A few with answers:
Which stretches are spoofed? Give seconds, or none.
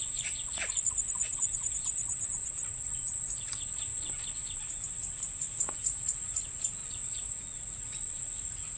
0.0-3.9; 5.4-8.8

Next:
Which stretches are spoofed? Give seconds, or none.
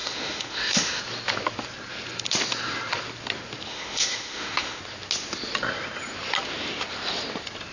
0.0-1.0; 3.7-4.8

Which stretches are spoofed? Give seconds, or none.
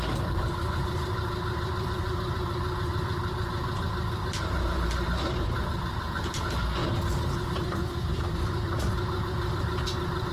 0.0-6.8; 7.5-10.3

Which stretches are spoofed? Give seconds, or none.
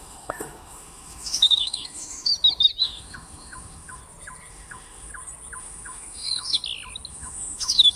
0.0-2.3; 2.8-4.0; 4.5-5.1; 5.6-6.6; 7.1-8.0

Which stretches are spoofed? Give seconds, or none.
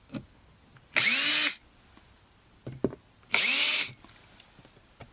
none